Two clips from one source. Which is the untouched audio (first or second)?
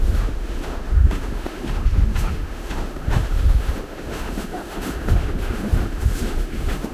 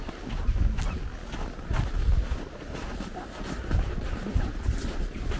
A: second